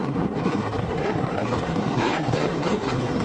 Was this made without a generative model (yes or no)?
no